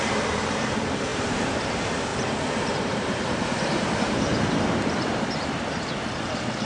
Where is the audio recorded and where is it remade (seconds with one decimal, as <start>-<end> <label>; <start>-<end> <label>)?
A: 0.0-4.3 remade; 4.3-5.8 recorded; 5.8-6.7 remade

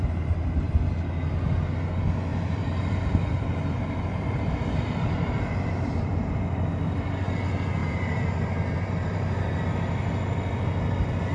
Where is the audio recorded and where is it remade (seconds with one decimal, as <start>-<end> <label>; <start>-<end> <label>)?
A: 0.0-2.3 recorded; 2.3-6.7 remade; 6.7-7.8 recorded; 7.8-9.6 remade; 9.6-11.3 recorded

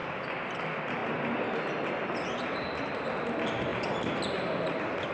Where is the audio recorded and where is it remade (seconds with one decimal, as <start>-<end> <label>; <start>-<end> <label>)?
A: 0.0-5.1 recorded